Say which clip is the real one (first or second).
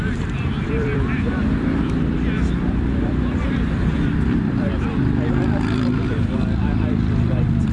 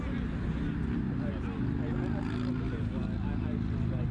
second